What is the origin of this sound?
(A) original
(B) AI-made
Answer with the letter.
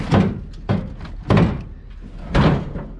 A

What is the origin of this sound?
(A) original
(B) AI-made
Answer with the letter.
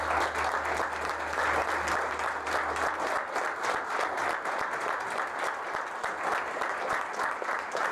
A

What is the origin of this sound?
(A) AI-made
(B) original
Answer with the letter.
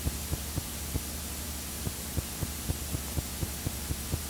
A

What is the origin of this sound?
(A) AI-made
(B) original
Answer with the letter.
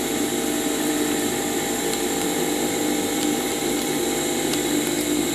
A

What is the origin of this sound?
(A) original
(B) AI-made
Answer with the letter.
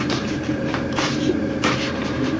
B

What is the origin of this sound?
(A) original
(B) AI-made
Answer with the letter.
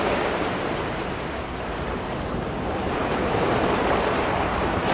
B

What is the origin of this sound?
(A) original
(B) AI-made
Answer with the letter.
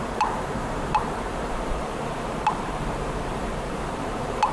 B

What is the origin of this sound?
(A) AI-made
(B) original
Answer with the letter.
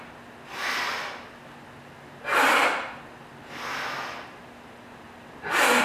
B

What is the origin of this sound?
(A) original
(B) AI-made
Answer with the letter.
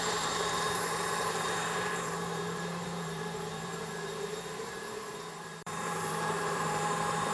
B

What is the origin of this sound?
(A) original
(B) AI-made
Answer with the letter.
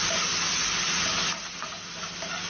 A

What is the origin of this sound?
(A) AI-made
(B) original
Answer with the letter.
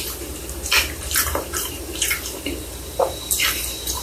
A